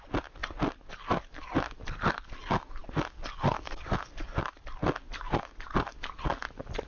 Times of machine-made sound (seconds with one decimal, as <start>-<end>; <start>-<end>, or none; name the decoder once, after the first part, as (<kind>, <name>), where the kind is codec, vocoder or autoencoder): none